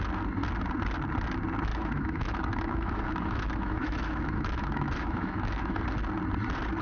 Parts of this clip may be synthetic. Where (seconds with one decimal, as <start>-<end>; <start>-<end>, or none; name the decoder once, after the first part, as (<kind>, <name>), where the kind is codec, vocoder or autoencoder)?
1.7-5.8 (autoencoder, DAC-VAE)

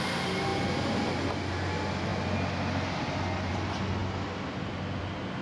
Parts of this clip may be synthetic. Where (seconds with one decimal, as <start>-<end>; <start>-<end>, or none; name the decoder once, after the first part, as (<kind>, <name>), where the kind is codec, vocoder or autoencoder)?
none

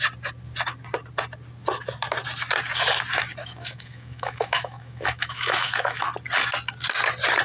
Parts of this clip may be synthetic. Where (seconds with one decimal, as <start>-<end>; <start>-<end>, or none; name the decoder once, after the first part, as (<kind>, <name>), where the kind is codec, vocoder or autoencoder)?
3.4-6.0 (autoencoder, DAC-VAE)

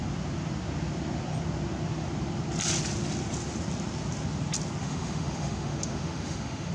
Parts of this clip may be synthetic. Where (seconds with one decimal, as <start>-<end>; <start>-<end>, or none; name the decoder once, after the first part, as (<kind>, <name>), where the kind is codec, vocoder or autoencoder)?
4.8-6.7 (autoencoder, DAC-VAE)

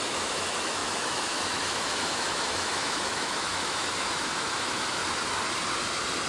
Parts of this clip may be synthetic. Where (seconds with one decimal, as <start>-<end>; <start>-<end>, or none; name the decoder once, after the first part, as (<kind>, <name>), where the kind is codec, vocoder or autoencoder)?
0.0-5.0 (autoencoder, DAC-VAE)

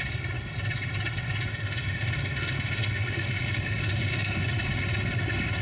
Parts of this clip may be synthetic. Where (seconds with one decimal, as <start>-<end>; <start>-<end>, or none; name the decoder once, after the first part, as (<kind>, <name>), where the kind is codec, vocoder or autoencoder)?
1.5-4.5 (autoencoder, DAC-VAE)

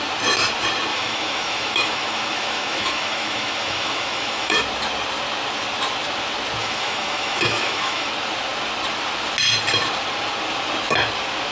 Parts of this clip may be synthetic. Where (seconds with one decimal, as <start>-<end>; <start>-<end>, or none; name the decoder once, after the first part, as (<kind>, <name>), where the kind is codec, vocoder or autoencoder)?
0.9-4.6 (autoencoder, DAC-VAE); 6.6-8.1

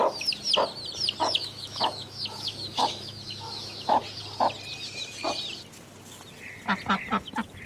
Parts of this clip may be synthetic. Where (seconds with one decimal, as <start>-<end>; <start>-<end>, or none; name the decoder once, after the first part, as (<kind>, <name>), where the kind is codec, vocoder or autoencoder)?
1.2-4.0 (autoencoder, DAC-VAE)